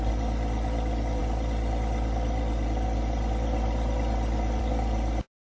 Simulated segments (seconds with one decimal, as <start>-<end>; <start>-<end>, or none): none